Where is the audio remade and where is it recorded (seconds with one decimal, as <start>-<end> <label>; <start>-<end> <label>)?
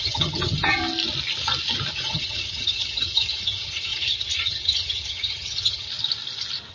0.0-0.8 remade; 0.8-1.9 recorded; 1.9-5.9 remade; 5.9-6.7 recorded